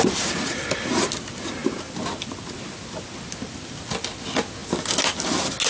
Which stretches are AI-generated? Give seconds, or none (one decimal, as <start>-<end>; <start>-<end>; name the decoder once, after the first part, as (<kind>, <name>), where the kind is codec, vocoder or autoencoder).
none

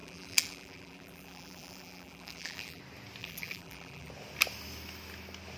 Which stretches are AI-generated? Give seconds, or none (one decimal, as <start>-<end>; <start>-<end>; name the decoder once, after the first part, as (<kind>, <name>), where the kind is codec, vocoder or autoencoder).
0.0-2.8 (vocoder, BigVGAN v2); 3.2-4.1

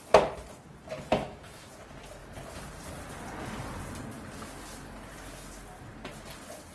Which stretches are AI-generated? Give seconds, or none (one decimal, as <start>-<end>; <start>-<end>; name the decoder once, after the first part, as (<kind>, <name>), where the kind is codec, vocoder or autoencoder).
1.1-1.7 (autoencoder, DAC-VAE)

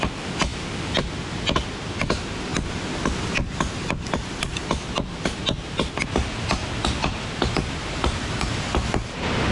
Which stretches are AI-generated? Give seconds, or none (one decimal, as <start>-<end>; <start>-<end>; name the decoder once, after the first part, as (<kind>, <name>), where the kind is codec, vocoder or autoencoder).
none